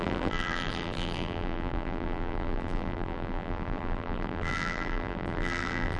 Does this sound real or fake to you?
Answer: fake